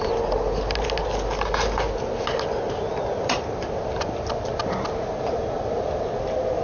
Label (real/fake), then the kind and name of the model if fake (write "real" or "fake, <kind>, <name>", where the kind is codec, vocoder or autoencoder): real